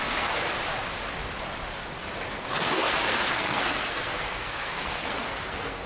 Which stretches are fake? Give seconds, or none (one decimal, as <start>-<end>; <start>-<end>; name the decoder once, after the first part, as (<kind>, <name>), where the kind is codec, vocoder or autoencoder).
0.0-0.4 (codec, SNAC); 2.3-5.9